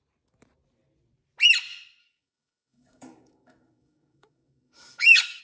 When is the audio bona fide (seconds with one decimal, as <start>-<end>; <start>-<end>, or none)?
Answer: 0.0-2.0